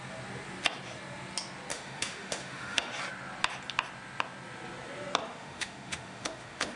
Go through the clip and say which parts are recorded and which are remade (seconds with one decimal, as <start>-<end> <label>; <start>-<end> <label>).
0.0-1.7 recorded; 1.7-2.9 remade; 2.9-5.2 recorded; 5.2-6.8 remade